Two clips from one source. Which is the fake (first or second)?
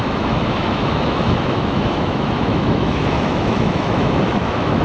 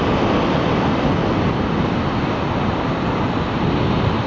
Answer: first